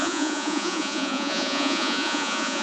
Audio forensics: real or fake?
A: fake